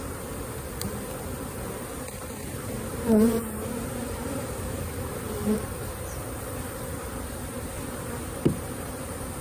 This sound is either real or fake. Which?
fake